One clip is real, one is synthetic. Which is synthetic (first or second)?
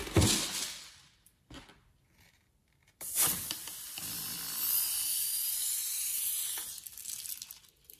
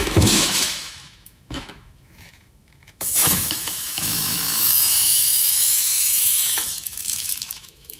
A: second